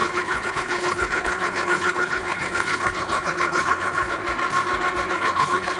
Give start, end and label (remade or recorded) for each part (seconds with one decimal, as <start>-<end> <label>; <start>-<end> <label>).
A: 0.0-4.2 remade; 4.2-5.1 recorded; 5.1-5.8 remade